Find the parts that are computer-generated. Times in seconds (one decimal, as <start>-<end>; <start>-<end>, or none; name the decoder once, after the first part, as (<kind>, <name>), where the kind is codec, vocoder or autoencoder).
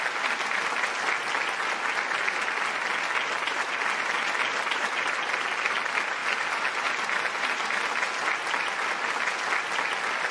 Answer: none